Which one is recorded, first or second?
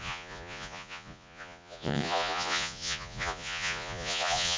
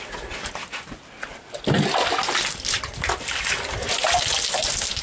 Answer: second